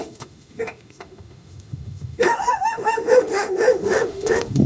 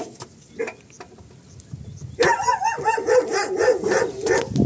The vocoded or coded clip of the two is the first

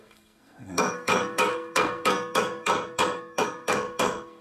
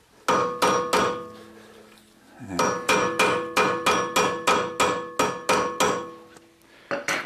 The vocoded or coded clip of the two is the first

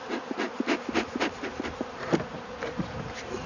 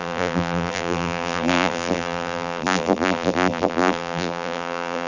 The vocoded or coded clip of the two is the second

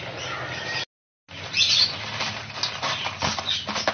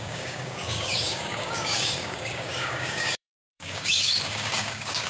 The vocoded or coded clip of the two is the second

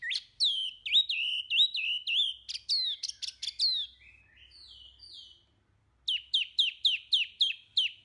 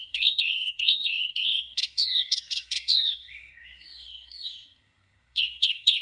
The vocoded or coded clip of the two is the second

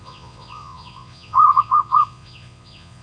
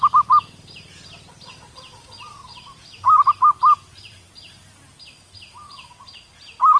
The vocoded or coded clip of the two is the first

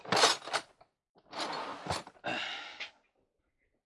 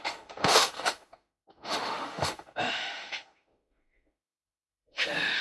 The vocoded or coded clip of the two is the second